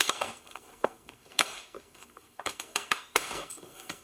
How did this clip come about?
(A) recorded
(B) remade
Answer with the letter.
B